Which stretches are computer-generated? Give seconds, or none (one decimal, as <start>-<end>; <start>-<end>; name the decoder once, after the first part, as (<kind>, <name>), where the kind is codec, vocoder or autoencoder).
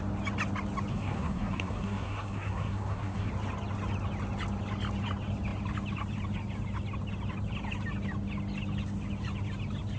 0.9-3.3 (codec, SNAC)